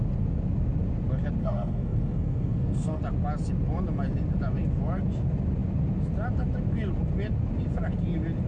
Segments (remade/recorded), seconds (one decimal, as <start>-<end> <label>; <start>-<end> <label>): 0.0-1.4 recorded; 1.4-3.0 remade; 3.0-8.5 recorded

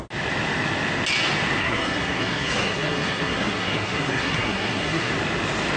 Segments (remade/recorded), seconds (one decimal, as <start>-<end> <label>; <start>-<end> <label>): 0.0-1.6 recorded; 1.6-5.1 remade; 5.1-5.8 recorded

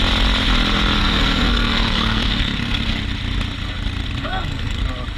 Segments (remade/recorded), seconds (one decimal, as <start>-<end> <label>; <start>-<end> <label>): 0.0-1.0 recorded; 1.0-3.0 remade; 3.0-4.2 recorded; 4.2-4.8 remade; 4.8-5.2 recorded

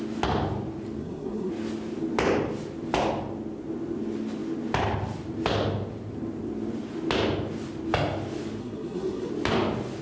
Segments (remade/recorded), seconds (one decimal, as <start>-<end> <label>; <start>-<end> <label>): 0.0-1.0 recorded; 1.0-1.5 remade; 1.5-8.6 recorded; 8.6-9.3 remade; 9.3-10.0 recorded

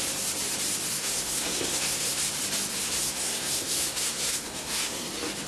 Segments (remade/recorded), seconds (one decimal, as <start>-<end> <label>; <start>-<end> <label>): 0.0-0.9 recorded; 0.9-2.3 remade; 2.3-2.7 recorded; 2.7-5.1 remade; 5.1-5.5 recorded

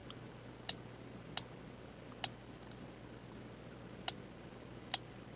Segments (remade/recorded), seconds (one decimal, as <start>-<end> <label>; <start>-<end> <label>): 0.0-5.4 recorded